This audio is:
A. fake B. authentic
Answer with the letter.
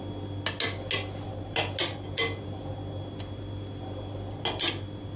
B